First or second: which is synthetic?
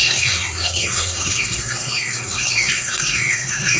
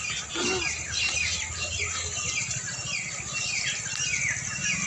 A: first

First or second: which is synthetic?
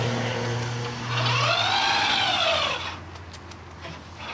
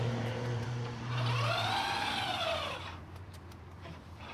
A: second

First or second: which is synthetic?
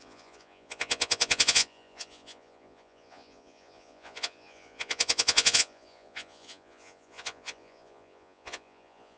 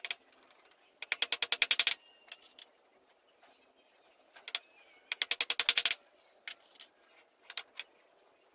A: first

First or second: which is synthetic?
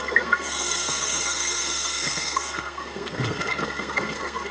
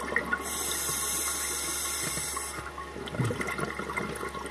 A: first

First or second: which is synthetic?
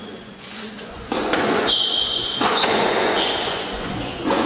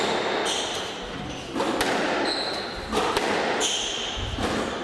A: first